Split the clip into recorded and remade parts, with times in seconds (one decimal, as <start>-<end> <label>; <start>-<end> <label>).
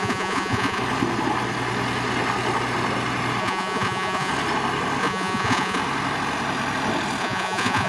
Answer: 0.0-0.8 remade; 0.8-3.4 recorded; 3.4-4.3 remade; 4.3-5.0 recorded; 5.0-5.8 remade; 5.8-7.2 recorded; 7.2-7.9 remade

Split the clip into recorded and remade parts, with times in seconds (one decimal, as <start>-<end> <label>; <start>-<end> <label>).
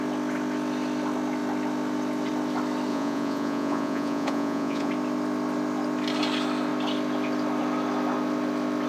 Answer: 0.0-2.9 recorded; 2.9-4.9 remade; 4.9-8.9 recorded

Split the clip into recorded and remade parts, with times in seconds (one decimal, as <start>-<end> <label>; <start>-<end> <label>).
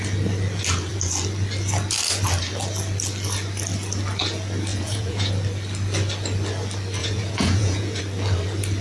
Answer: 0.0-4.7 recorded; 4.7-5.3 remade; 5.3-7.0 recorded; 7.0-8.0 remade; 8.0-8.8 recorded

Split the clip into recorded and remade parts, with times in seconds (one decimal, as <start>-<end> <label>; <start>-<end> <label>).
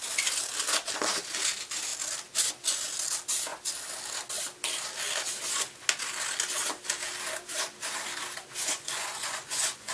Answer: 0.0-8.6 recorded; 8.6-9.9 remade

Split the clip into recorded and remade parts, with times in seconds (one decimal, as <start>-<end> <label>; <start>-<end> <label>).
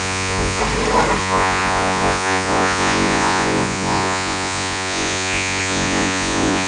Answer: 0.0-0.6 remade; 0.6-1.2 recorded; 1.2-6.7 remade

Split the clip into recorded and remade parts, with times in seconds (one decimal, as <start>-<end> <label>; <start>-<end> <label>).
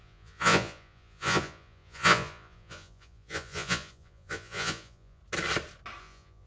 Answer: 0.0-5.2 remade; 5.2-6.0 recorded; 6.0-6.5 remade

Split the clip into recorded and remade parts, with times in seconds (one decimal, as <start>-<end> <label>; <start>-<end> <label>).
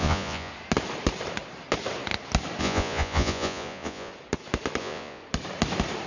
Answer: 0.0-0.5 remade; 0.5-2.6 recorded; 2.6-4.1 remade; 4.1-4.8 recorded; 4.8-5.2 remade; 5.2-6.1 recorded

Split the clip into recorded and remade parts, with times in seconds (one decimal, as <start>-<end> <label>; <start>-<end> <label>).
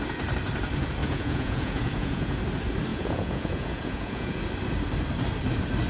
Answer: 0.0-1.0 recorded; 1.0-2.4 remade; 2.4-2.9 recorded; 2.9-4.4 remade; 4.4-5.9 recorded